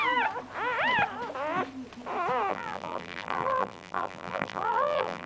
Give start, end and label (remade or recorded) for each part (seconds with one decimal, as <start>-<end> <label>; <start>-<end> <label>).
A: 0.0-2.5 recorded; 2.5-5.3 remade